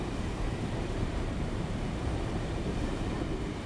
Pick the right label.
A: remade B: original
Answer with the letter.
A